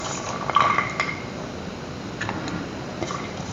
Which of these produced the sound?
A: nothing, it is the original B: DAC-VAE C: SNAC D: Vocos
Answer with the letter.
A